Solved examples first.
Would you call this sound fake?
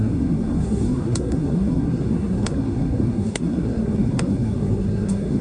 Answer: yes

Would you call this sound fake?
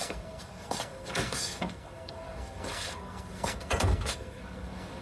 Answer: yes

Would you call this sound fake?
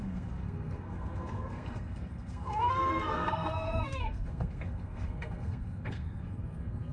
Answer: yes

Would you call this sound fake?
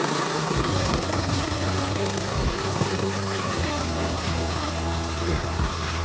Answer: yes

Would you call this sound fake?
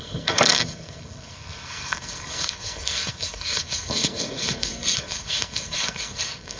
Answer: yes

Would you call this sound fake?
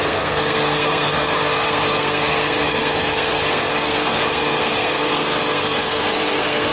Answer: yes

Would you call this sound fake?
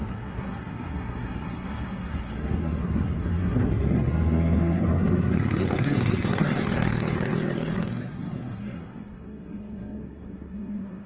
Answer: yes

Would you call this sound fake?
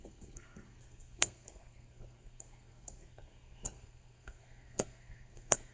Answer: yes